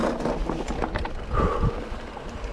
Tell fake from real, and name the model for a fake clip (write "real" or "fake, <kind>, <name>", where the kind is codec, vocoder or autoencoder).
real